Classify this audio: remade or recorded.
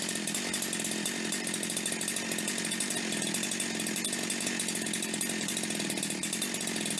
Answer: recorded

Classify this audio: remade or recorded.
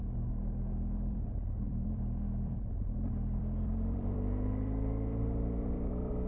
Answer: remade